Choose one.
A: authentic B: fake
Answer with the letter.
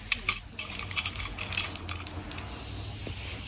A